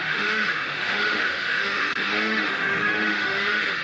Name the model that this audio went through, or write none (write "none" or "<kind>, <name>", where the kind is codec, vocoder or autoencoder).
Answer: autoencoder, DAC-VAE